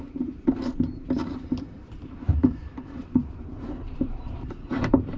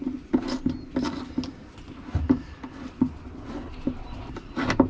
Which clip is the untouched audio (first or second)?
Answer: second